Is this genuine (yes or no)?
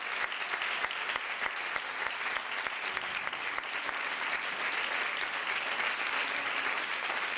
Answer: yes